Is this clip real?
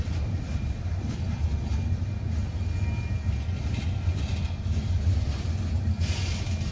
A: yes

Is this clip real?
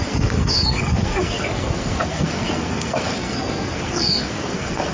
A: no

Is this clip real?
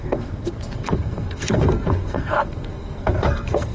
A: no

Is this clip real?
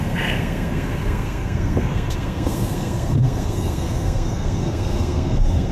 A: no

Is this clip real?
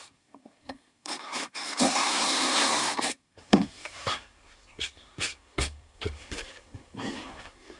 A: no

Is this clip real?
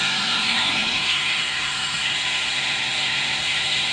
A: no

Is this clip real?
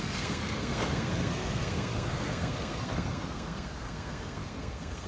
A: no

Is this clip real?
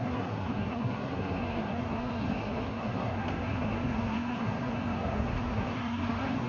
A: no